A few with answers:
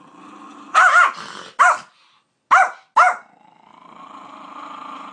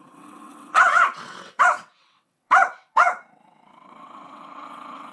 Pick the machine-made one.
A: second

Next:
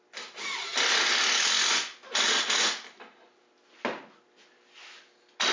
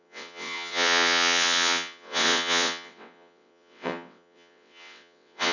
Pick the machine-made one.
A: second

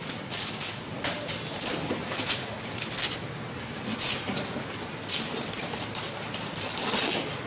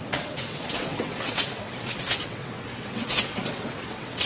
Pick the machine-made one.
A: second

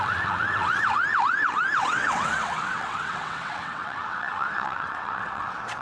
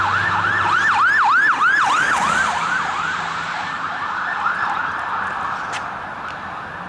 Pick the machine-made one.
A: first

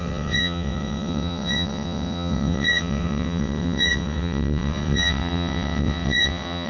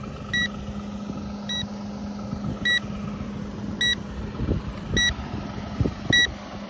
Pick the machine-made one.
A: first